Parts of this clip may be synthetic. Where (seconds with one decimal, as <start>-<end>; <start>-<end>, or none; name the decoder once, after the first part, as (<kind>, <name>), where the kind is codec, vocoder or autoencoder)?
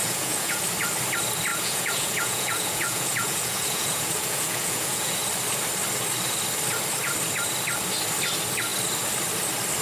0.0-0.6 (vocoder, Vocos); 1.5-5.2